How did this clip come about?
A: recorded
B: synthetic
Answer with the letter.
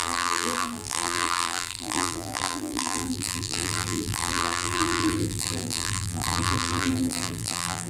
B